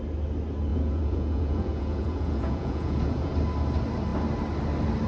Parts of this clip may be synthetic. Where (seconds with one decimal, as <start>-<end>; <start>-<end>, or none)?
0.7-3.3